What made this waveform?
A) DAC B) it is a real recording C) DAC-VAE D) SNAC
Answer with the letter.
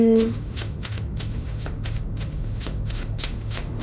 C